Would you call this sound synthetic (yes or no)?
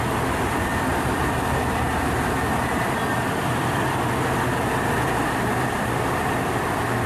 yes